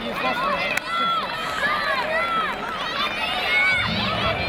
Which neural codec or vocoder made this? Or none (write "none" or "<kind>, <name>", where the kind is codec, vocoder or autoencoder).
none